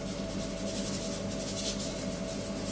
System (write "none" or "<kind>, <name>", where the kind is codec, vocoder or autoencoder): none